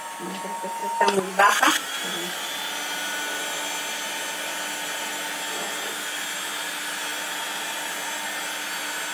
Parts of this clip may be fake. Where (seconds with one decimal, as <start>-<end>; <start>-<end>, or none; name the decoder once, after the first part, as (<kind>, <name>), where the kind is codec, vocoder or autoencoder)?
none